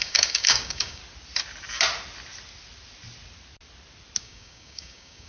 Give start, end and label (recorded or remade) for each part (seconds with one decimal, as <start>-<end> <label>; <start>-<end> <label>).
0.0-1.0 remade; 1.0-4.2 recorded; 4.2-5.3 remade